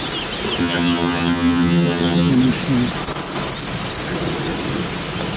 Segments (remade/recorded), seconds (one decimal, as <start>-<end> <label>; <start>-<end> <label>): 0.0-0.6 recorded; 0.6-2.3 remade; 2.3-5.4 recorded

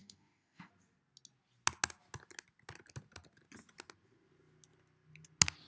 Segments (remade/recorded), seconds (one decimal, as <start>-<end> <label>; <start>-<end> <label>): 0.0-0.7 remade; 0.7-5.7 recorded

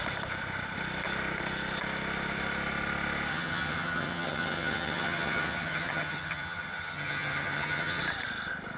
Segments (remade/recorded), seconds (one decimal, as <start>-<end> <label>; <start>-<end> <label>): 0.0-3.3 recorded; 3.3-8.0 remade; 8.0-8.8 recorded

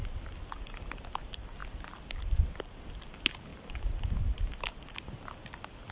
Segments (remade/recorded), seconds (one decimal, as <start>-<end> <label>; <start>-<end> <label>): 0.0-3.5 recorded; 3.5-4.5 remade; 4.5-5.9 recorded

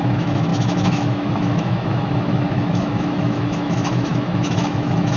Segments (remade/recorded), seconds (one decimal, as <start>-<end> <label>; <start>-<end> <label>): 0.0-5.2 remade

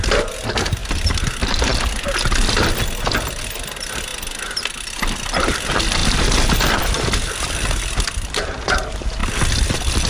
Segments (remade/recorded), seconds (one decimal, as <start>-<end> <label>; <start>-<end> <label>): 0.0-10.1 recorded

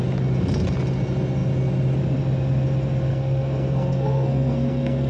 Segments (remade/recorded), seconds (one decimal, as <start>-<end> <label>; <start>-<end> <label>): 0.0-3.1 recorded; 3.1-5.1 remade